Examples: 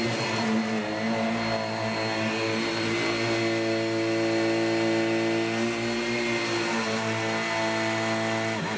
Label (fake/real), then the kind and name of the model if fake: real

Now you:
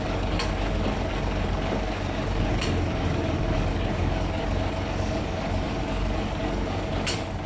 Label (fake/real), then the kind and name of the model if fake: fake, codec, DAC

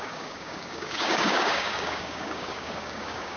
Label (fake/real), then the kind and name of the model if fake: fake, codec, DAC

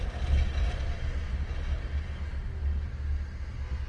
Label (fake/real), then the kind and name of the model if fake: real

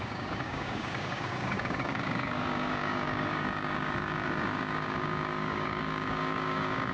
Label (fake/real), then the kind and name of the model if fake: fake, codec, DAC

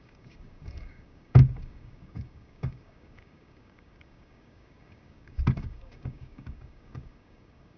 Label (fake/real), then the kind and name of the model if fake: fake, codec, DAC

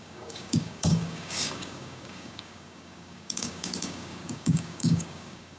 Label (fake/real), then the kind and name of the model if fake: fake, codec, DAC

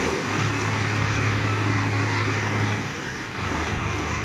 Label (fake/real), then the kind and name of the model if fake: fake, codec, DAC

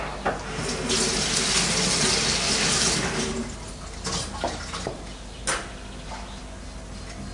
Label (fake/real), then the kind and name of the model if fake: real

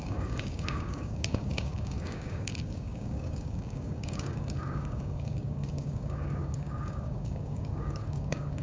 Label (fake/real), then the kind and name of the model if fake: fake, codec, DAC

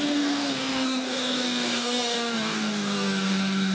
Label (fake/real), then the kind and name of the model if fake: fake, codec, DAC